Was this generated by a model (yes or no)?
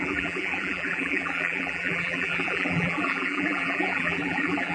yes